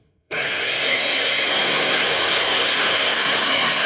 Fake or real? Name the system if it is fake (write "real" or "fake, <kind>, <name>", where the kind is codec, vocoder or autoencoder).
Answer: fake, codec, SNAC